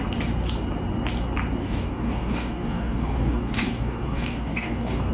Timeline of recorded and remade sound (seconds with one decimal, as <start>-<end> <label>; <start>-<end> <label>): 0.0-1.6 recorded; 1.6-5.1 remade